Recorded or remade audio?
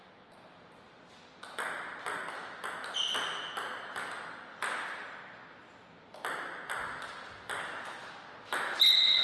recorded